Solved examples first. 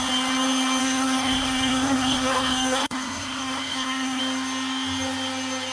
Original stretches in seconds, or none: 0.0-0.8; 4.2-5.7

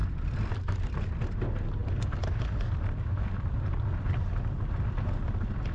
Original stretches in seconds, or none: 1.1-1.8; 4.7-5.7